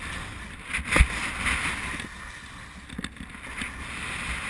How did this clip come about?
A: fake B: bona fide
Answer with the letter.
B